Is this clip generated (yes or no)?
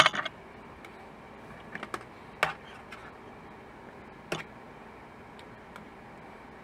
no